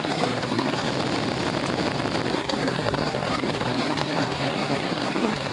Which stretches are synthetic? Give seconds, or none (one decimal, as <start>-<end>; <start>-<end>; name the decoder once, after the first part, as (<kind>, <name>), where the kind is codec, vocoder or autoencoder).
0.0-0.9 (codec, SNAC); 2.3-5.5